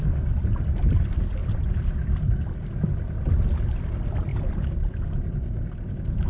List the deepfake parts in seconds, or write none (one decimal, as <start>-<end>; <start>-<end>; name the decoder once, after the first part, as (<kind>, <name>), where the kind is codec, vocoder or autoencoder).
1.4-2.5 (vocoder, BigVGAN v2); 4.3-5.3